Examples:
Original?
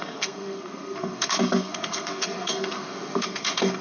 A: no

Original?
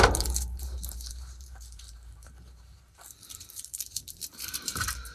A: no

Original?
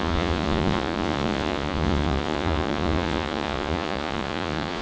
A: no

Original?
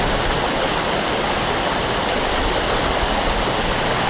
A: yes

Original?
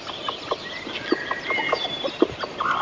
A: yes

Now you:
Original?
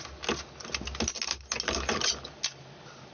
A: yes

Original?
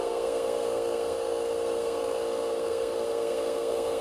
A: no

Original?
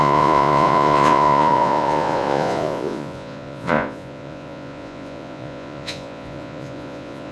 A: no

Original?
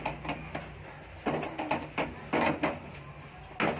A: yes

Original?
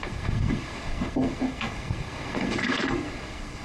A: no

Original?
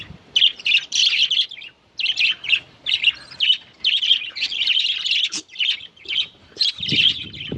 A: no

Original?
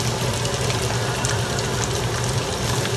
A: yes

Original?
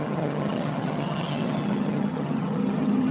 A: no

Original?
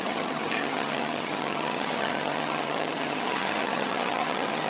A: no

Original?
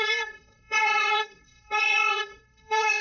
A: no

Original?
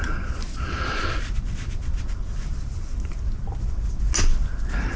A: yes